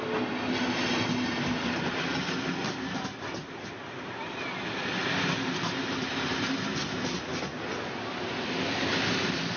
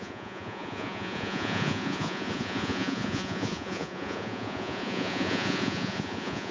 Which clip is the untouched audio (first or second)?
first